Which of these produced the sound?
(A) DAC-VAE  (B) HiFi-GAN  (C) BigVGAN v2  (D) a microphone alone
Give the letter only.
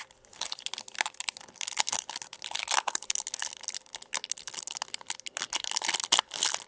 D